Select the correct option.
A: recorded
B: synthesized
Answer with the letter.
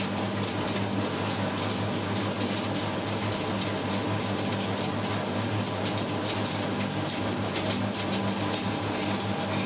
A